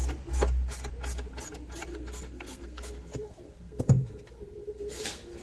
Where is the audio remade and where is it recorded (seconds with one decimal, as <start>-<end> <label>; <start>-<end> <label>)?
0.0-1.9 recorded; 1.9-5.4 remade